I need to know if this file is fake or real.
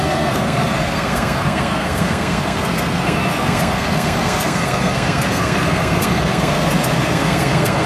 fake